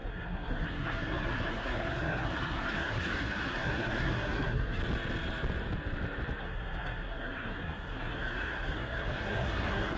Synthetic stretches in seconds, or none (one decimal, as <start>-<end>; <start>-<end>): 0.0-4.8; 6.4-10.0